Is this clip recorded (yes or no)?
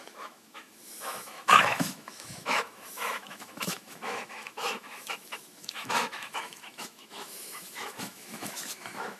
no